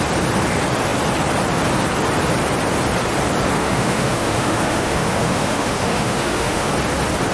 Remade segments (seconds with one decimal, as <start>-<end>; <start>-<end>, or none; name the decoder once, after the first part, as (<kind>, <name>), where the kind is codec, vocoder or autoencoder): 3.6-6.7 (autoencoder, DAC-VAE)